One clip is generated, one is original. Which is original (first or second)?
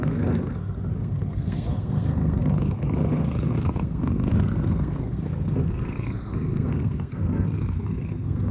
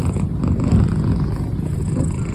second